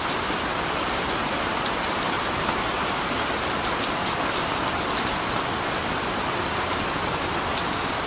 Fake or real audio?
real